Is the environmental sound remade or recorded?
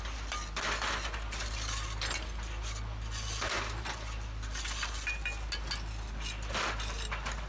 recorded